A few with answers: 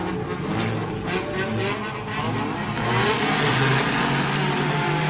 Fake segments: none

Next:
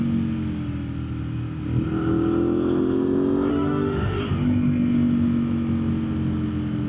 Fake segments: 3.5-4.2 (autoencoder, DAC-VAE)

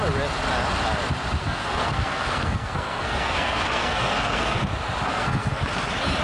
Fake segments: 1.4-4.6 (codec, SNAC); 5.1-5.6

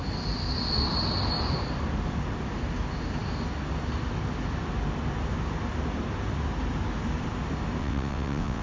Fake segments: 7.8-8.6 (vocoder, WaveNeXt)